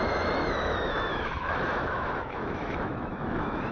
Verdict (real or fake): fake